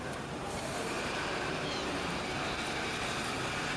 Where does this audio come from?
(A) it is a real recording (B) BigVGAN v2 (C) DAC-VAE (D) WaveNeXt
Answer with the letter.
B